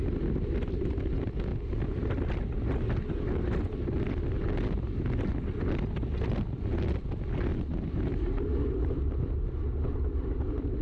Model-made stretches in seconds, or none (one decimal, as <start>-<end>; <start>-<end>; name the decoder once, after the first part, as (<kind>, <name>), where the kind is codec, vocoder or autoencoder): 7.5-9.3 (vocoder, BigVGAN v2)